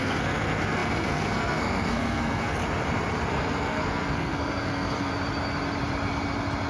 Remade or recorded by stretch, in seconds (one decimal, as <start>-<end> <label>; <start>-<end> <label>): 0.0-2.6 remade; 2.6-3.3 recorded; 3.3-5.1 remade; 5.1-6.7 recorded